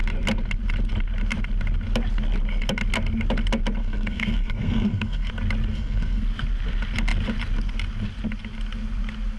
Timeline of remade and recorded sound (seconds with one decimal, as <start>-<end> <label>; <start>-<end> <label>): 0.0-3.8 recorded; 3.8-5.3 remade; 5.3-5.7 recorded; 5.7-6.2 remade; 6.2-9.4 recorded